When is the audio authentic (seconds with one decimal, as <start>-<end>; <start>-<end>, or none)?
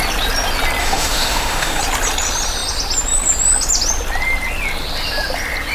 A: 0.0-0.8; 1.8-5.7